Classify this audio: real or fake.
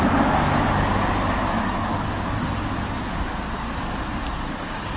real